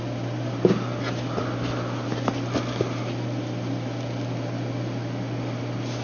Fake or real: real